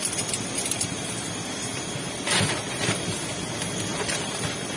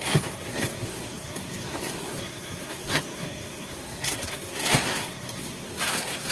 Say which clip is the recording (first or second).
first